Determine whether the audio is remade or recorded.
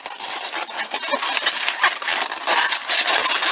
recorded